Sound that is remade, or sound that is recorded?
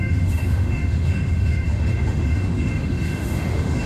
remade